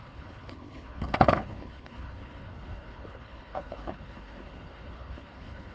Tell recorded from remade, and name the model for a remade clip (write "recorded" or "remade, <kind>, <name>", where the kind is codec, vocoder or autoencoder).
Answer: remade, codec, HILCodec